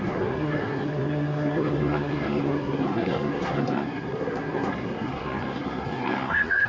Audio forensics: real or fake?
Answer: fake